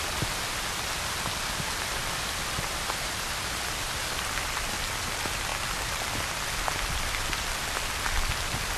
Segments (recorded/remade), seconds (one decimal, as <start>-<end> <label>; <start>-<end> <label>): 0.0-8.8 recorded